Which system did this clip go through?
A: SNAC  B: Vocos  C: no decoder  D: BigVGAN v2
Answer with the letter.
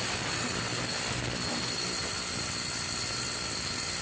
C